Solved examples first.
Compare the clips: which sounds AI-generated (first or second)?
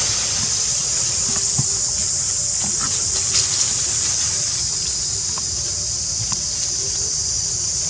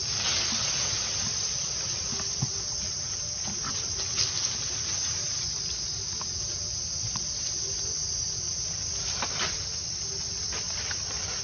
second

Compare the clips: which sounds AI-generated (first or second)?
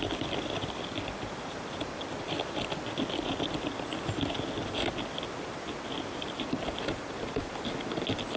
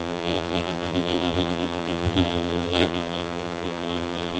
second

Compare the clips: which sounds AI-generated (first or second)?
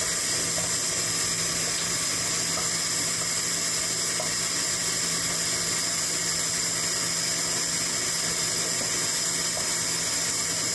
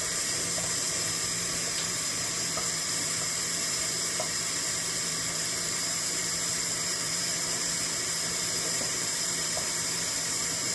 second